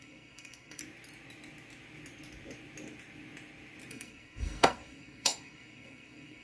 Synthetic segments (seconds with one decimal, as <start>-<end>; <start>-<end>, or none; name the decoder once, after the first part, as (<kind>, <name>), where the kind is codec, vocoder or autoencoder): 0.0-0.8 (codec, SNAC); 3.9-6.4